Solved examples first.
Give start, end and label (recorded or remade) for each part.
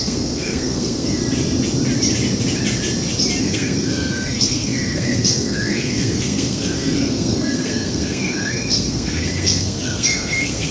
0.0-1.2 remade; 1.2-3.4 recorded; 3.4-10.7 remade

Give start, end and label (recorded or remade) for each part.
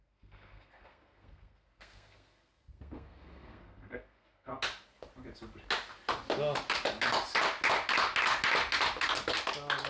0.0-4.5 remade; 4.5-9.9 recorded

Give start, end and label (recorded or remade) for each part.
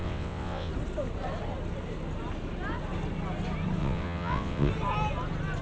0.0-0.7 remade; 0.7-3.8 recorded; 3.8-4.7 remade; 4.7-5.6 recorded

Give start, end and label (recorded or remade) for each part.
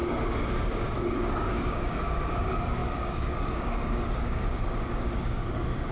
0.0-5.9 remade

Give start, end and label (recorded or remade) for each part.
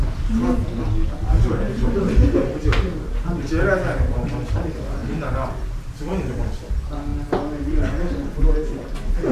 0.0-5.0 recorded; 5.0-6.4 remade; 6.4-9.3 recorded